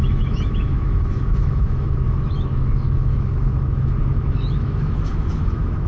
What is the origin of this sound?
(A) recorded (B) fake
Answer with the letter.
B